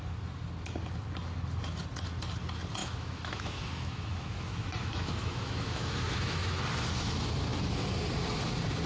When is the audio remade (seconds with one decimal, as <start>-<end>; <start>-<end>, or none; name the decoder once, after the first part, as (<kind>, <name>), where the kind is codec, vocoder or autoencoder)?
2.8-6.6 (autoencoder, DAC-VAE)